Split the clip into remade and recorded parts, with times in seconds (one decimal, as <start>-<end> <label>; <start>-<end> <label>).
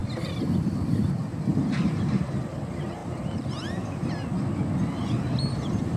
0.0-1.5 recorded; 1.5-2.2 remade; 2.2-3.0 recorded; 3.0-4.1 remade; 4.1-6.0 recorded